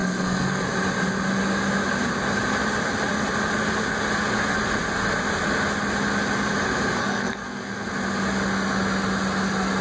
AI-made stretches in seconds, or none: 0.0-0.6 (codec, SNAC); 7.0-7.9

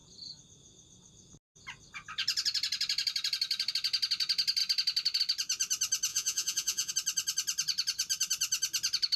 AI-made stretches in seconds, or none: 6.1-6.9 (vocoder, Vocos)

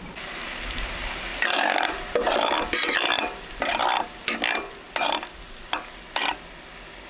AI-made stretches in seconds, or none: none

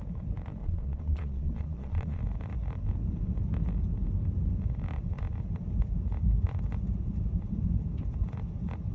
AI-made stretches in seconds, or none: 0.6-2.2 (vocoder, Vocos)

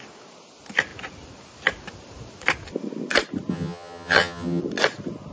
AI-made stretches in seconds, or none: 3.5-4.6 (vocoder, HiFi-GAN)